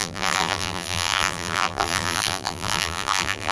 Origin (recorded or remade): remade